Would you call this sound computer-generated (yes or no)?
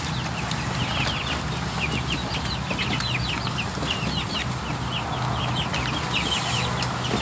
no